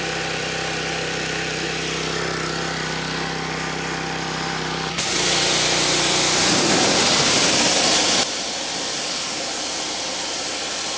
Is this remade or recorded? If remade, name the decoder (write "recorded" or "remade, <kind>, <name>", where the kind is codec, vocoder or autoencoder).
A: remade, vocoder, BigVGAN v2